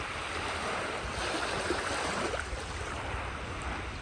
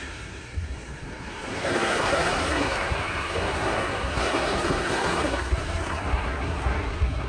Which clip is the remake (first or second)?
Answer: second